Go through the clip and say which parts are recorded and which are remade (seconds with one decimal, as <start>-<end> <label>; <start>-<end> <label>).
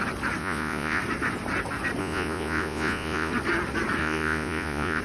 0.0-0.4 recorded; 0.4-1.0 remade; 1.0-2.0 recorded; 2.0-3.3 remade; 3.3-4.0 recorded; 4.0-5.0 remade